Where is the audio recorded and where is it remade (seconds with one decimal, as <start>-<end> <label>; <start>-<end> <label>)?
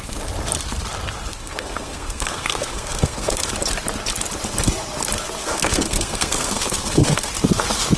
0.0-1.3 recorded; 1.3-3.5 remade; 3.5-5.4 recorded; 5.4-7.3 remade; 7.3-8.0 recorded